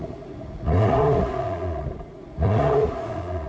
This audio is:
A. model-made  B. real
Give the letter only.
A